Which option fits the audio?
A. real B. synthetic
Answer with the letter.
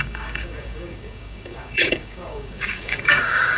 B